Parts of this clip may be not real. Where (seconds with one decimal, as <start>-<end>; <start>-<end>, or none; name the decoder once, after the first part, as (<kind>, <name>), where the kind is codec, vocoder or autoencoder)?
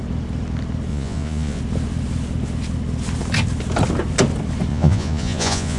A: 0.9-1.6 (vocoder, Vocos); 4.7-5.8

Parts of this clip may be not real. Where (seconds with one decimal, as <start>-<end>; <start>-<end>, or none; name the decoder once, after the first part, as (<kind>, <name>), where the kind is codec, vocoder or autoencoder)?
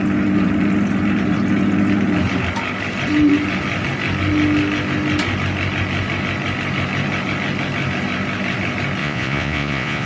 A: 9.0-10.1 (vocoder, Vocos)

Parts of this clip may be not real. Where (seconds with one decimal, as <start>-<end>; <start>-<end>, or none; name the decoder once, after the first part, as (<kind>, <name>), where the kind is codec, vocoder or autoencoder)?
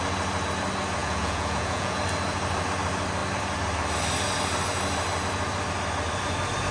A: 1.0-2.0 (vocoder, Vocos)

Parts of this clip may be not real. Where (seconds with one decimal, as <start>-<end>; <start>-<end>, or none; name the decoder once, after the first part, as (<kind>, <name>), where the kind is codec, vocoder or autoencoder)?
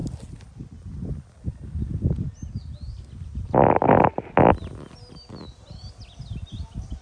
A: none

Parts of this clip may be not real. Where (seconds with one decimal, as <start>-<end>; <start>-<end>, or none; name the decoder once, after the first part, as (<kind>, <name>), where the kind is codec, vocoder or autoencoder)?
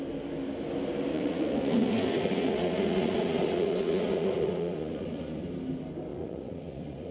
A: 1.1-5.4 (vocoder, Vocos); 6.1-7.1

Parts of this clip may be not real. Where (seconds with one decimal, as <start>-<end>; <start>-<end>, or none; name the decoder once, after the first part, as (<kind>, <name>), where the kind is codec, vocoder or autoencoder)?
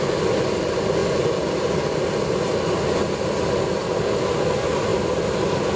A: none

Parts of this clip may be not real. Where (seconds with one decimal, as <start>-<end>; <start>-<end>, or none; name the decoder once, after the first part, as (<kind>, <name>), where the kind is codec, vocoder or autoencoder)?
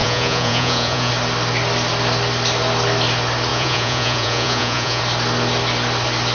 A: 0.0-1.1 (vocoder, Vocos); 3.5-5.0